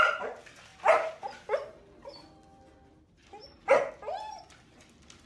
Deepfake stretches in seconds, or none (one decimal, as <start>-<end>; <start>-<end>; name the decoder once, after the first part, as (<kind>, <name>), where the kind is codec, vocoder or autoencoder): none